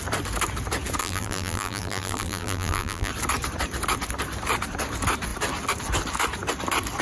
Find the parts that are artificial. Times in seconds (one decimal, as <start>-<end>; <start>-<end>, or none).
1.0-3.1